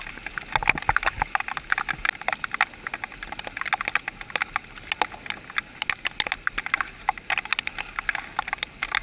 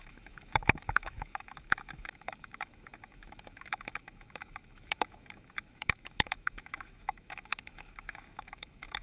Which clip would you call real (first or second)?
first